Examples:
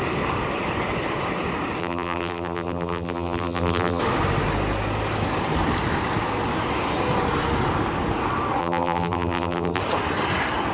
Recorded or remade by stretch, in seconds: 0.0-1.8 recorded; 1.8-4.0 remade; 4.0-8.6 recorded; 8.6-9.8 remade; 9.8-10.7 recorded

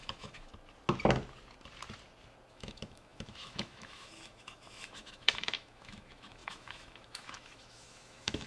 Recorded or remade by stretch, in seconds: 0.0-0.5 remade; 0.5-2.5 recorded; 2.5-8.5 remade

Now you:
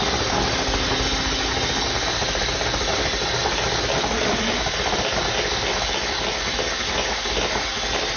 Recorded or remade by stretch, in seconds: 0.0-8.2 recorded

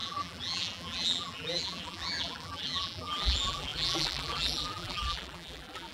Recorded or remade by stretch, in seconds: 0.0-5.9 remade

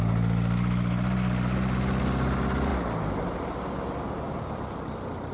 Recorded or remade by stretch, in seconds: 0.0-5.3 recorded

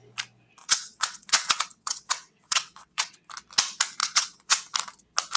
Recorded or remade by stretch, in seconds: 0.0-0.6 recorded; 0.6-3.2 remade; 3.2-4.0 recorded; 4.0-4.6 remade; 4.6-5.4 recorded